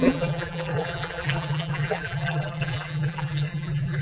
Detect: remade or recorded remade